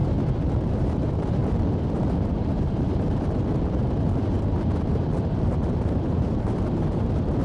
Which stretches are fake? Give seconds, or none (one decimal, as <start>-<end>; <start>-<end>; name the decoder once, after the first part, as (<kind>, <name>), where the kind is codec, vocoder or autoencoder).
0.7-1.4 (vocoder, BigVGAN v2); 5.2-7.4